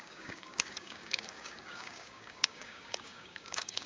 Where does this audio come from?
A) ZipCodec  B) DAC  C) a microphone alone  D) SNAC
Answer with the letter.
B